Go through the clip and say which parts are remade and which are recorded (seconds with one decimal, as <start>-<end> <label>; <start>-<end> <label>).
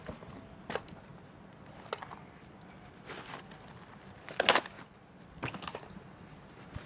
0.0-6.9 recorded